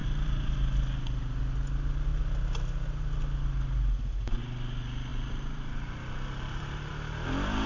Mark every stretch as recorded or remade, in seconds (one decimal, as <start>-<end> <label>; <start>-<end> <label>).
0.0-0.5 remade; 0.5-5.1 recorded; 5.1-6.9 remade; 6.9-7.7 recorded